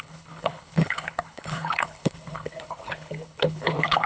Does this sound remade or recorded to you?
remade